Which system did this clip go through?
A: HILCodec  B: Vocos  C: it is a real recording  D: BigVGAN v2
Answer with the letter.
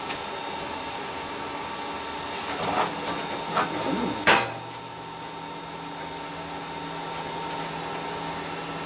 C